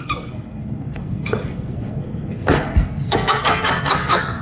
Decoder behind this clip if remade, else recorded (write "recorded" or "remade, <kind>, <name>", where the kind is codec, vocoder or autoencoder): remade, codec, SNAC